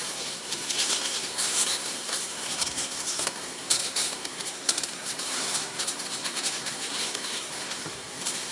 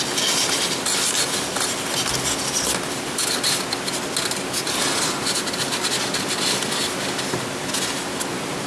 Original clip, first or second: second